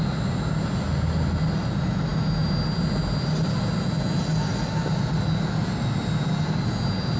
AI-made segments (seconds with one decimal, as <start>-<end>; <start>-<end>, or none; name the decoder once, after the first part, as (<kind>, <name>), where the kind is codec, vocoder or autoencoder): none